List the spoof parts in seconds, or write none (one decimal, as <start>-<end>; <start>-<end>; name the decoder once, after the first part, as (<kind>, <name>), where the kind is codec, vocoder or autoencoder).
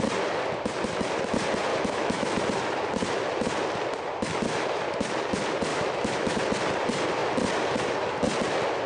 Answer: 1.7-2.3 (autoencoder, DAC-VAE); 5.7-6.4